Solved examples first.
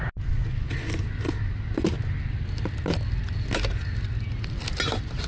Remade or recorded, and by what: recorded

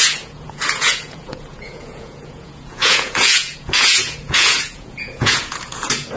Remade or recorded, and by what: remade, vocoder, Vocos